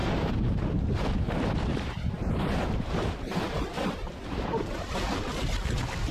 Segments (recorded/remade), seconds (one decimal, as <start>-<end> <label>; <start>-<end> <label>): 0.0-0.5 remade; 0.5-1.7 recorded; 1.7-5.0 remade; 5.0-6.1 recorded